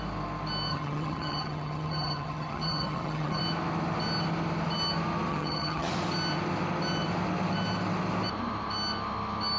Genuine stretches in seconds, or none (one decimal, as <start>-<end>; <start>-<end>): 0.0-0.7; 3.4-5.3; 5.9-9.6